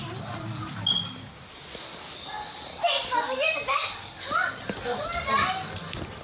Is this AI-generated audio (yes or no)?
no